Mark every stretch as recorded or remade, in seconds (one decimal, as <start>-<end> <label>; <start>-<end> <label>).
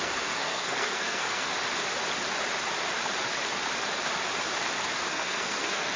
0.0-1.5 remade; 1.5-5.1 recorded; 5.1-6.0 remade